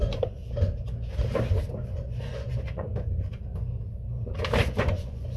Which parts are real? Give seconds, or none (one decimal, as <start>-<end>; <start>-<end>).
0.4-1.7; 2.9-4.6